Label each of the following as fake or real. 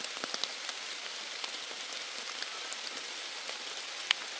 real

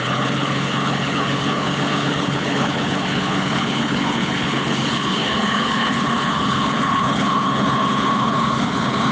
fake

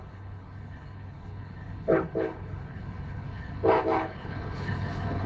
fake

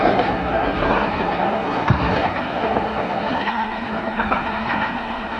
fake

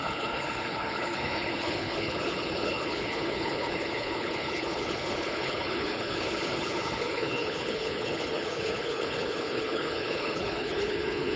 fake